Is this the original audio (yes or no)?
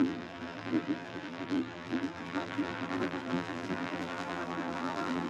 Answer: no